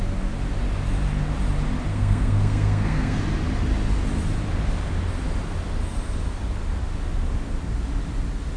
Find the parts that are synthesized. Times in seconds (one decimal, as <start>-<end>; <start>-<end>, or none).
1.9-3.2

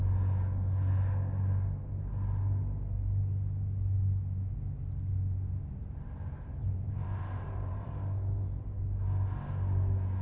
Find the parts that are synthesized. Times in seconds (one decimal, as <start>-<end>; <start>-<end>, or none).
6.6-7.9

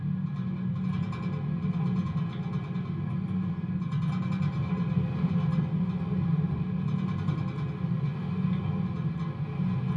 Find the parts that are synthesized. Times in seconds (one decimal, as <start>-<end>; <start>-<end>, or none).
none

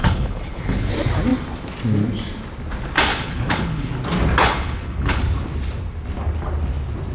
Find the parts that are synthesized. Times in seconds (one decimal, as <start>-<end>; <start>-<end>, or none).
0.0-0.9; 3.1-3.9; 4.4-5.2